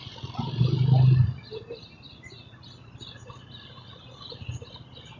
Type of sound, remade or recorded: recorded